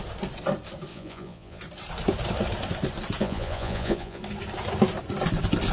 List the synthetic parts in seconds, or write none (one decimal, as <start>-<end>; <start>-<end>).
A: 0.9-1.6; 3.2-4.2